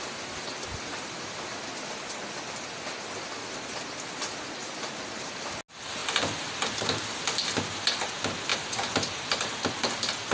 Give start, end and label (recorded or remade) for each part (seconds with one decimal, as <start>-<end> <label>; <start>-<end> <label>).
0.0-10.3 recorded